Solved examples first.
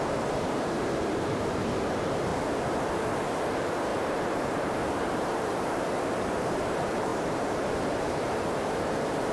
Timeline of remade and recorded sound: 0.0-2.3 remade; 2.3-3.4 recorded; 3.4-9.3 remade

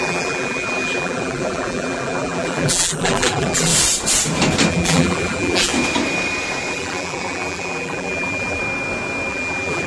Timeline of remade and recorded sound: 0.0-3.7 remade; 3.7-4.7 recorded; 4.7-5.7 remade; 5.7-6.7 recorded; 6.7-8.6 remade; 8.6-9.3 recorded; 9.3-9.9 remade

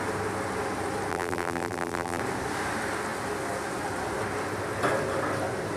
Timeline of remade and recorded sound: 0.0-1.1 recorded; 1.1-2.2 remade; 2.2-5.8 recorded

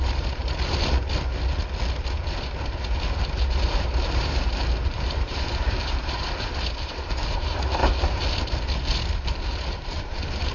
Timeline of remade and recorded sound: 0.0-0.4 remade; 0.4-3.2 recorded; 3.2-7.8 remade; 7.8-9.1 recorded; 9.1-10.5 remade

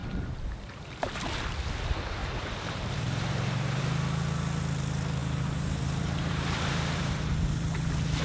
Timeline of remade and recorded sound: 0.0-0.8 remade; 0.8-2.2 recorded; 2.2-3.8 remade; 3.8-5.2 recorded; 5.2-8.2 remade